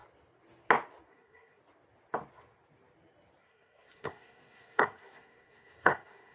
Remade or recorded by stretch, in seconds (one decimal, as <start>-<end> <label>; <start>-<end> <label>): 0.0-1.1 recorded; 1.1-1.6 remade; 1.6-3.4 recorded; 3.4-6.3 remade